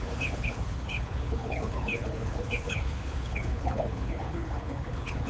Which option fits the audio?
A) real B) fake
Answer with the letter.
B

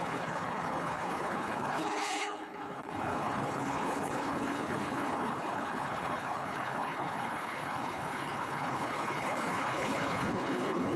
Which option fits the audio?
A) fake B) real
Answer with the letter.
A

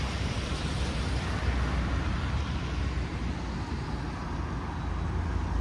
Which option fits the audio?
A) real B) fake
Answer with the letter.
A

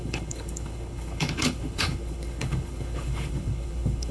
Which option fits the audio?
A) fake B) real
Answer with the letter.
A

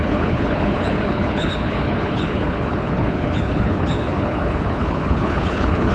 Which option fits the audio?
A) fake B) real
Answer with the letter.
A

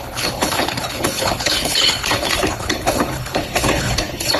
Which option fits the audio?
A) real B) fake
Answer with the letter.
B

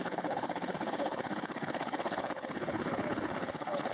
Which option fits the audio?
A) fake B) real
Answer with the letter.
A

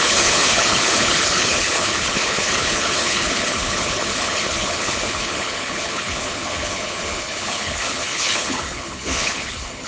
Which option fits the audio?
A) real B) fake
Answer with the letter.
B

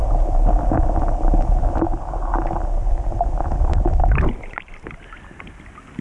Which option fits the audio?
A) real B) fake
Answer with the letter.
A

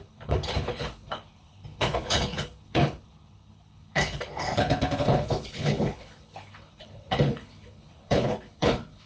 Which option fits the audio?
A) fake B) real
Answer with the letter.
A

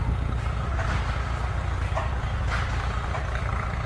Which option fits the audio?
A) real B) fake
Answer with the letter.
A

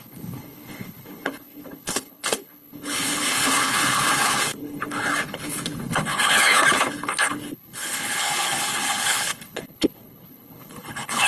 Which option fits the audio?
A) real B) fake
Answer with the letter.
B